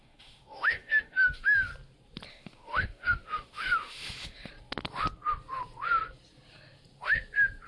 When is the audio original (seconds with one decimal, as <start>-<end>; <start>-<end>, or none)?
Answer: 1.7-2.3; 4.5-7.7